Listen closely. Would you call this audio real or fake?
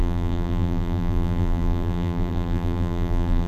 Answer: fake